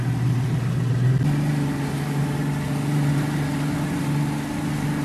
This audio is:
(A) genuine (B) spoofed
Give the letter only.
A